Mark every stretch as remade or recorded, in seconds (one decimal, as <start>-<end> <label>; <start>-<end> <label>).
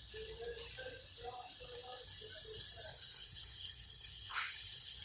0.0-2.9 recorded; 2.9-5.0 remade